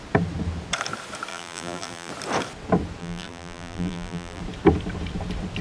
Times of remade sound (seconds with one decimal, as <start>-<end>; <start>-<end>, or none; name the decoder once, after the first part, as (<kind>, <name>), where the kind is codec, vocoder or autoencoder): 1.3-2.1 (vocoder, BigVGAN v2); 3.0-4.4